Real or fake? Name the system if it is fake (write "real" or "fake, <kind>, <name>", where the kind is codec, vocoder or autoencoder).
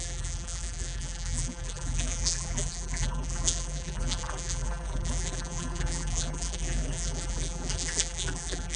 fake, vocoder, BigVGAN v2